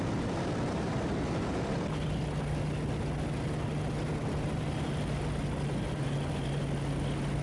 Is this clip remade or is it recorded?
recorded